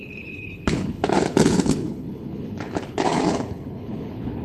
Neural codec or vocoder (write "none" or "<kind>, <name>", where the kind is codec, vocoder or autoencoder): codec, HILCodec